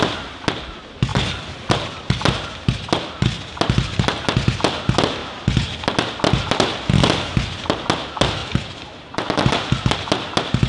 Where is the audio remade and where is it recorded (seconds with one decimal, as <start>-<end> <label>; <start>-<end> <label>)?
0.0-1.1 recorded; 1.1-1.7 remade; 1.7-8.4 recorded; 8.4-9.6 remade; 9.6-10.7 recorded